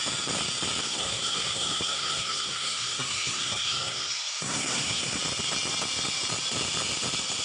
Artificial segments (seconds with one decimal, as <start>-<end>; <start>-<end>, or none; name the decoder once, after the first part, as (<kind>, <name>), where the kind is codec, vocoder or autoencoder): 0.8-5.2 (codec, SNAC)